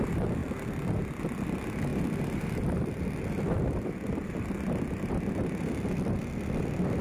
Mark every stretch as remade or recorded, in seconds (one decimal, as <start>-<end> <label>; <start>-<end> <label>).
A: 0.0-7.0 recorded